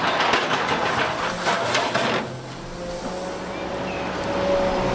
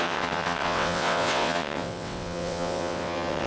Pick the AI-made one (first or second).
second